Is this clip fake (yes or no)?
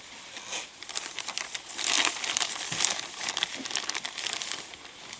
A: no